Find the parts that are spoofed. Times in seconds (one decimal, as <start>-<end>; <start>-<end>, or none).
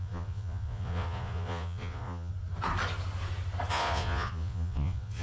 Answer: 0.0-2.3; 3.7-5.2